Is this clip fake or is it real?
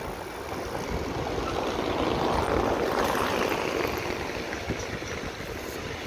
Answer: real